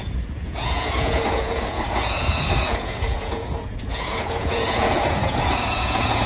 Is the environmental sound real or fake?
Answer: fake